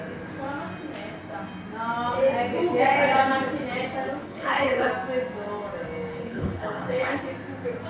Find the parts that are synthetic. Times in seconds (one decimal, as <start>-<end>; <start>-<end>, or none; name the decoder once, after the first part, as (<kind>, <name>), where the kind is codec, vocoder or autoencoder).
4.2-4.9 (codec, HILCodec); 6.1-7.2